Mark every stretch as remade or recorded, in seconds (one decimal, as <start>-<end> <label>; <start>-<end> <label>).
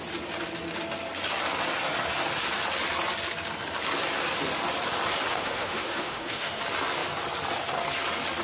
0.0-5.3 recorded; 5.3-6.6 remade; 6.6-8.4 recorded